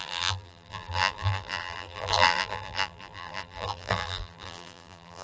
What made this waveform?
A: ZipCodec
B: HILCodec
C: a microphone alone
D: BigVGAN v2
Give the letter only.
D